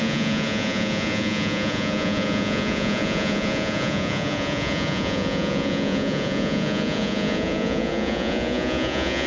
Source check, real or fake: fake